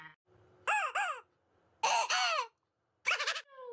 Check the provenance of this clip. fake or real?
real